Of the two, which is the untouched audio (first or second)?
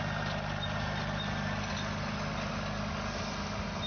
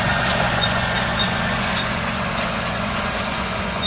first